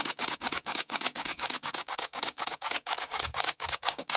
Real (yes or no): no